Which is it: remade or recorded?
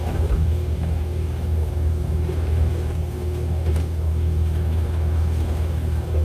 remade